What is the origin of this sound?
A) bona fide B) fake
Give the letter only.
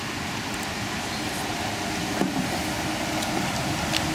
A